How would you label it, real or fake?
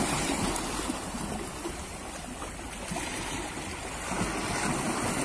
real